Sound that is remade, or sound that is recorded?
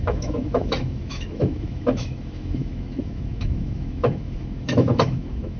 remade